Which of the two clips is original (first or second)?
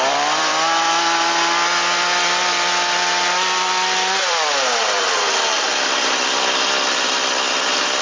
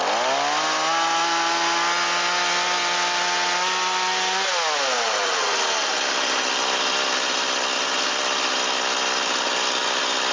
second